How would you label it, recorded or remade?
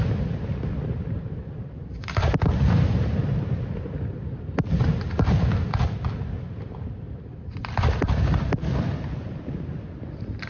recorded